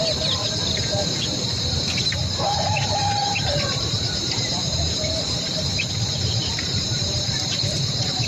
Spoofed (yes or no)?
yes